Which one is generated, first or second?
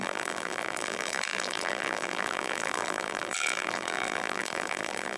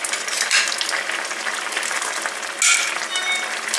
first